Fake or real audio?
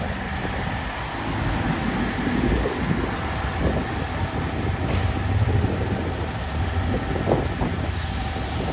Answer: real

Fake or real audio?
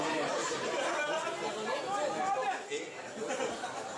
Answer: real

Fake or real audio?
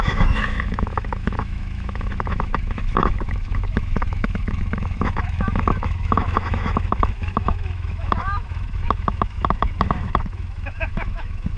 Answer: fake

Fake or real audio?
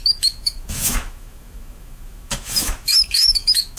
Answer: fake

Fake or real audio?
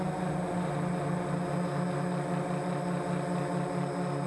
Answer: real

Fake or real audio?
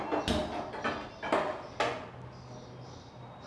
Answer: real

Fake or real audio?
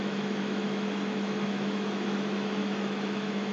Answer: fake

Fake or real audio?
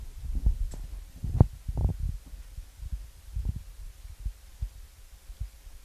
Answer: real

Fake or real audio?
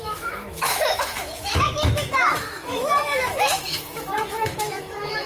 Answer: fake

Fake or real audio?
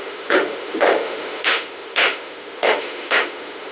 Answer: fake